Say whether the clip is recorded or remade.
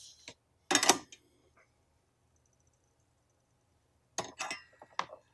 recorded